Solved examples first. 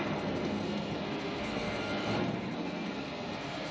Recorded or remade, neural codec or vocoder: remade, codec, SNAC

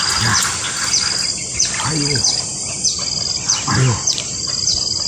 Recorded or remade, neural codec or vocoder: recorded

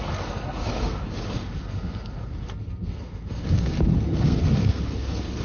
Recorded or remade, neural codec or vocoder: remade, codec, SNAC